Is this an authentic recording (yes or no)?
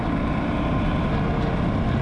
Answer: yes